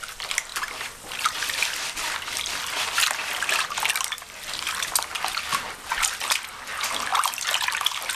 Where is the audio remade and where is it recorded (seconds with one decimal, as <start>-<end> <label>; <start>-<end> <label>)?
0.0-0.5 recorded; 0.5-4.9 remade; 4.9-5.5 recorded; 5.5-6.6 remade; 6.6-7.1 recorded; 7.1-8.2 remade